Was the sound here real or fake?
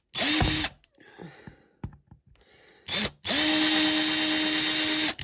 real